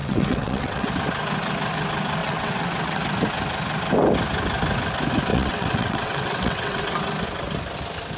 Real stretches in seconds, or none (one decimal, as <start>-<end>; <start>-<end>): 0.9-2.2; 3.0-5.3; 6.8-8.2

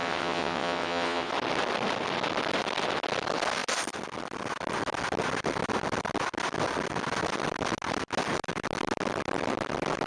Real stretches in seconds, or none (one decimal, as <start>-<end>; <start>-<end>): 1.3-10.1

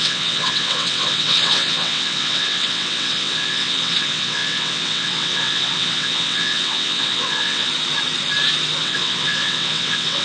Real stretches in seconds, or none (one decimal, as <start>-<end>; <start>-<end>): 7.7-8.8

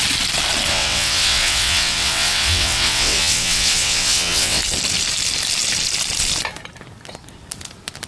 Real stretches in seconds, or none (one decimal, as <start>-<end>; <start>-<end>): 0.0-0.7; 4.6-8.1